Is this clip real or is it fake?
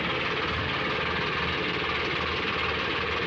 real